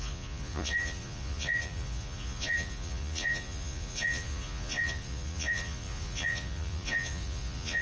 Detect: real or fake fake